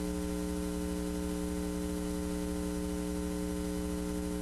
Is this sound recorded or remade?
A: recorded